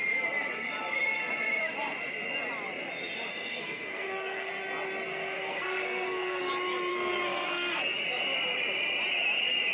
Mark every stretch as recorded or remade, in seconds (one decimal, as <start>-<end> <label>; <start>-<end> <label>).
0.0-3.3 recorded; 3.3-4.5 remade; 4.5-5.1 recorded; 5.1-6.5 remade; 6.5-6.9 recorded; 6.9-7.8 remade; 7.8-9.7 recorded